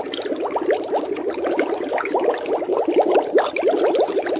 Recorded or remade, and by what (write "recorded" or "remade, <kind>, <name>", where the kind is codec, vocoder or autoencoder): recorded